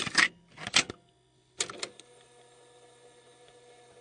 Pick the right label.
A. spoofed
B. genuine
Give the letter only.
B